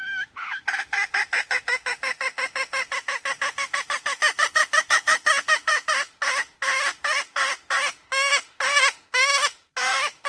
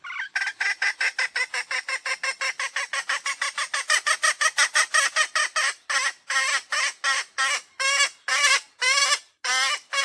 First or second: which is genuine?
second